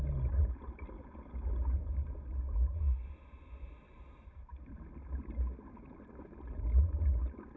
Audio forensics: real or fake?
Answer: real